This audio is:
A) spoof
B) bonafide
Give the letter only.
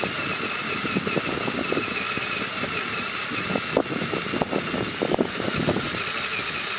B